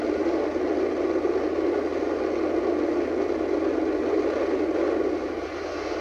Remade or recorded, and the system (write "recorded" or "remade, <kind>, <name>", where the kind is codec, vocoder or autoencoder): recorded